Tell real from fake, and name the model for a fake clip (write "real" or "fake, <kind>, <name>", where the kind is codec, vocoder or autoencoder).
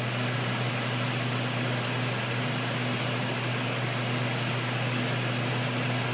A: real